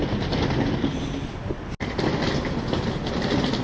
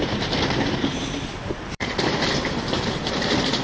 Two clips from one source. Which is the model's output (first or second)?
second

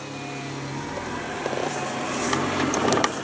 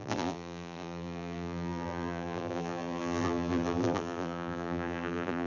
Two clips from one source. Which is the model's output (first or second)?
second